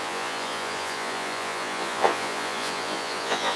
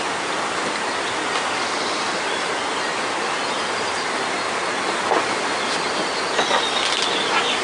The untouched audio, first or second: second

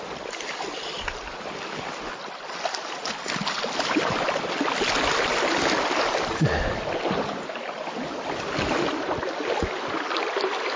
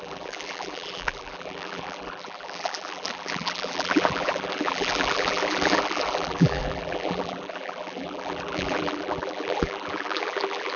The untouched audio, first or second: first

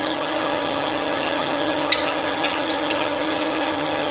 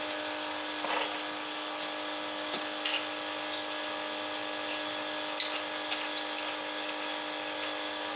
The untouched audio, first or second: second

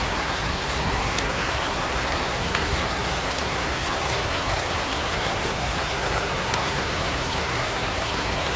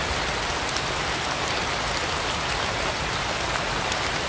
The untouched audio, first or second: second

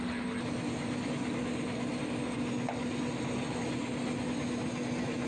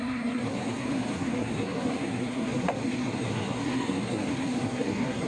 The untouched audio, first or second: first